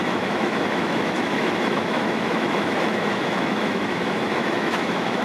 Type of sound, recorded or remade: remade